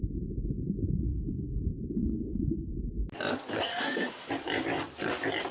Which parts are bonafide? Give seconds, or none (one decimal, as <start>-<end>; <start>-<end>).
0.0-1.1; 1.6-2.0; 2.7-3.7; 4.3-5.5

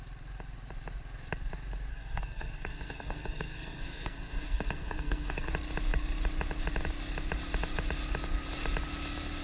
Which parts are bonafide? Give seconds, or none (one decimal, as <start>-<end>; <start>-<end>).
0.0-1.9; 5.5-9.4

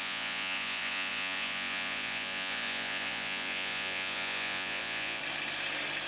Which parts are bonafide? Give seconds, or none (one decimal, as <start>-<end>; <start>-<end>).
5.2-6.1

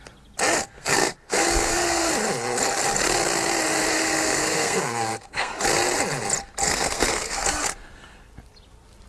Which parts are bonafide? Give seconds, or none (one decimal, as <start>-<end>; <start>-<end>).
0.0-0.6; 2.1-4.0; 5.5-6.6; 7.5-9.1

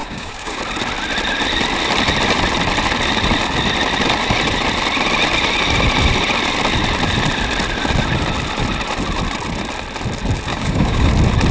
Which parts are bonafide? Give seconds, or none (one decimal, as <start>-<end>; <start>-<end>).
0.6-10.5; 11.1-11.5

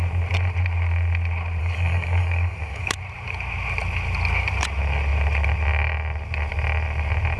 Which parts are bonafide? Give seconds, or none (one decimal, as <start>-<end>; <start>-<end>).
0.0-1.6; 3.0-7.4

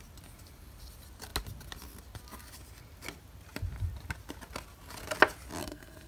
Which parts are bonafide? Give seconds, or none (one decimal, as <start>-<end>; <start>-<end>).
0.0-5.6

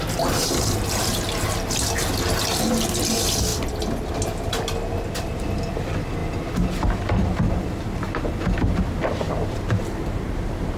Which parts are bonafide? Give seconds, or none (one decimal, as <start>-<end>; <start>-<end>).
0.0-10.8